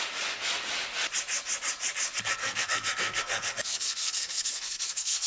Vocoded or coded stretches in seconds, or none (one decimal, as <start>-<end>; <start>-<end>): 2.4-5.3